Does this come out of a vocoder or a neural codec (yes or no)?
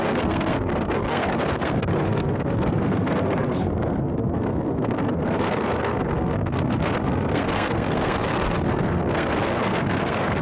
yes